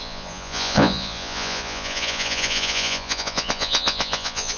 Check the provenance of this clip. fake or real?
fake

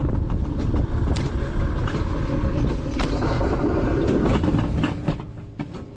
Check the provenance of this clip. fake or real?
real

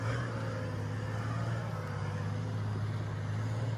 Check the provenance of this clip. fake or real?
real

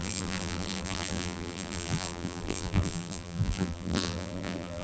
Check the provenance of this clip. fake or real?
fake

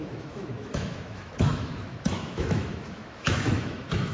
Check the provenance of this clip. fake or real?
fake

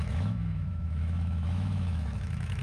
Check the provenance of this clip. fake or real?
fake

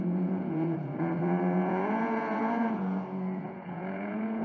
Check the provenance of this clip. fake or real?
fake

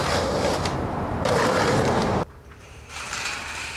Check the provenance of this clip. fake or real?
fake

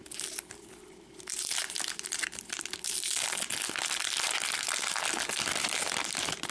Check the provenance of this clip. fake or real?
real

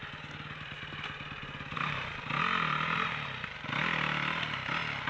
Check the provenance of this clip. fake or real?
real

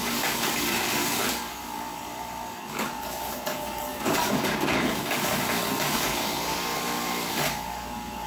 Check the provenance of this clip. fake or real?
fake